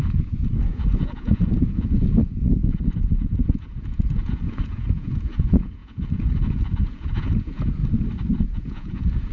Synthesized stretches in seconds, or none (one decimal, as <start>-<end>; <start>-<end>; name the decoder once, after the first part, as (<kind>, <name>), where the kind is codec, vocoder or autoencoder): 0.0-7.8 (vocoder, Vocos); 8.4-9.3

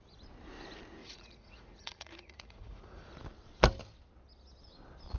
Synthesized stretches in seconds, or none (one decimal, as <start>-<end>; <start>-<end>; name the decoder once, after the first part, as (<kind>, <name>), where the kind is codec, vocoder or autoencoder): 1.0-3.1 (vocoder, Vocos)

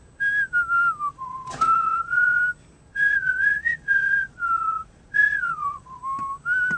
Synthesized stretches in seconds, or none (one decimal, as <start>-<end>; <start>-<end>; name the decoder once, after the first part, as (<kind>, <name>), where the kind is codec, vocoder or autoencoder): 1.1-2.4 (vocoder, Vocos); 2.9-6.0

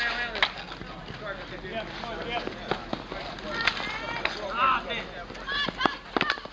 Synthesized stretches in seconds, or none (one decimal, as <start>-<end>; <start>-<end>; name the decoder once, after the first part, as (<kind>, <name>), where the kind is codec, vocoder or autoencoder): none

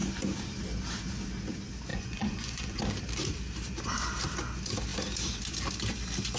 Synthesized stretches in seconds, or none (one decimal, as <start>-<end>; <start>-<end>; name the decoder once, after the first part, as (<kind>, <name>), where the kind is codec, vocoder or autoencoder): 1.9-2.8 (vocoder, Vocos)